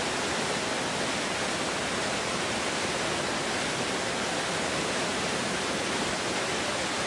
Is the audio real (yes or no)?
yes